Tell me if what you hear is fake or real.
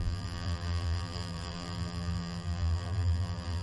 fake